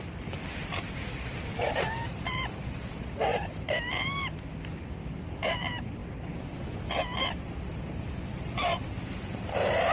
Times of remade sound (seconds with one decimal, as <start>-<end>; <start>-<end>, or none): 0.0-6.0; 7.0-9.9